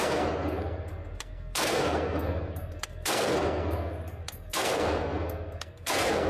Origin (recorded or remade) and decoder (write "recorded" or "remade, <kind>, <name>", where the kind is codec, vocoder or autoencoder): remade, codec, SNAC